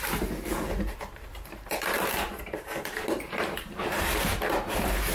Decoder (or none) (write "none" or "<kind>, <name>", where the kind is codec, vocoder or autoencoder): vocoder, BigVGAN v2